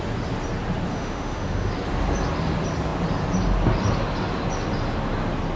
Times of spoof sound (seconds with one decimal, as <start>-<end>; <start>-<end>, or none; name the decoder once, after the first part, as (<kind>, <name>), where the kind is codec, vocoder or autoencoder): 0.9-1.7 (autoencoder, DAC-VAE)

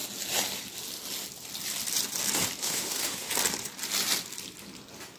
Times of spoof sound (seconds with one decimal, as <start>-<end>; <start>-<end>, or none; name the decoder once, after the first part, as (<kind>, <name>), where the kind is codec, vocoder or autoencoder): 2.6-3.3 (autoencoder, DAC-VAE)

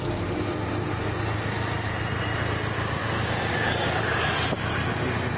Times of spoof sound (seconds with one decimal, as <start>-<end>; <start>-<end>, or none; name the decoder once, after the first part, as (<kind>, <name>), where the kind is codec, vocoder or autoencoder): none

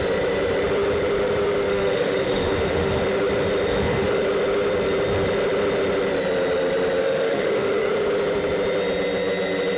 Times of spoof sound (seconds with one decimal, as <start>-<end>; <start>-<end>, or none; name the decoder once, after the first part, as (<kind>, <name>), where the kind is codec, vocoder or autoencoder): 1.7-3.0 (autoencoder, DAC-VAE); 3.7-4.2; 7.0-7.9

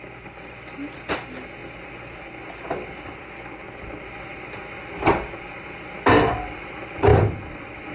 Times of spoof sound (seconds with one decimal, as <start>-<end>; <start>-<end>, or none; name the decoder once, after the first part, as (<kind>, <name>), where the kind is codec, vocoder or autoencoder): none